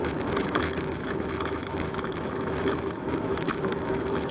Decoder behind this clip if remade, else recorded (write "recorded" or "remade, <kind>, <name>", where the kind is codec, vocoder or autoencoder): remade, autoencoder, DAC-VAE